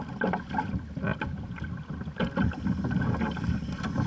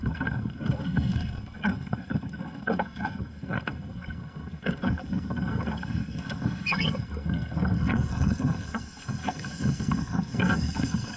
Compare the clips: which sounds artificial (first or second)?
second